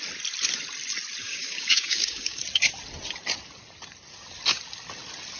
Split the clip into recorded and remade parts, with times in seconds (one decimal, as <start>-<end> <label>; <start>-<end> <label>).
0.0-1.2 recorded; 1.2-2.4 remade; 2.4-5.4 recorded